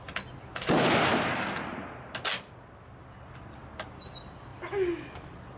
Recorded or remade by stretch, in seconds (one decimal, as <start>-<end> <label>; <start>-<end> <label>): 0.0-5.6 recorded